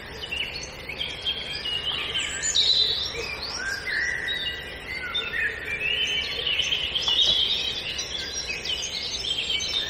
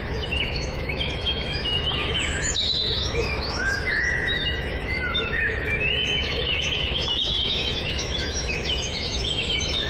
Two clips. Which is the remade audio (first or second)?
second